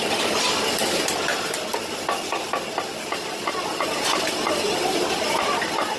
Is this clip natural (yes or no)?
yes